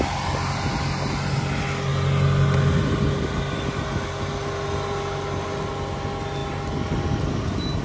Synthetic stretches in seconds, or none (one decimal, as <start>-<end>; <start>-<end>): none